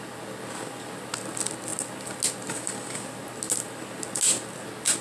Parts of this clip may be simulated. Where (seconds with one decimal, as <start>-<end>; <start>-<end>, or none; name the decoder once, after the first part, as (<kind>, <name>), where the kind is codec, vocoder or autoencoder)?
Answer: none